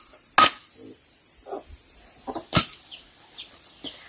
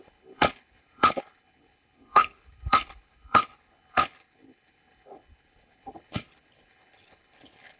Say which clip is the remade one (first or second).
second